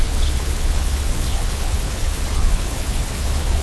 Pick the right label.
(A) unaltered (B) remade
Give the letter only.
B